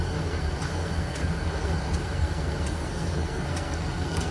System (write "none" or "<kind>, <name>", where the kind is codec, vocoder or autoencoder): codec, SNAC